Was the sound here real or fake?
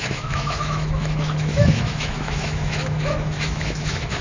fake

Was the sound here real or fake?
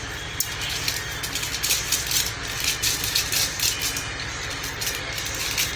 real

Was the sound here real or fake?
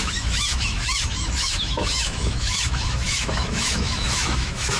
fake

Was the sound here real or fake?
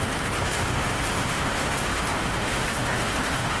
fake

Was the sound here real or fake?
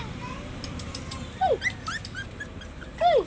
real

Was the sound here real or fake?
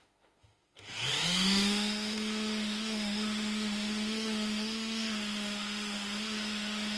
fake